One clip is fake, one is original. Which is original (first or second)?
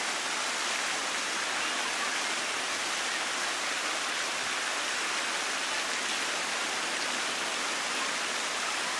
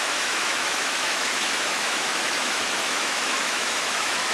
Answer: first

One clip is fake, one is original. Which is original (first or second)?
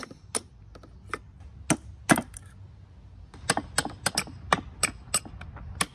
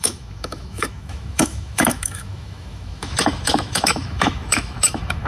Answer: first